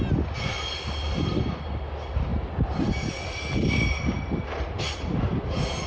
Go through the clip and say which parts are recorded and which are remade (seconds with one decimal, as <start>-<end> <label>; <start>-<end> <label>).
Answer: 0.0-5.9 recorded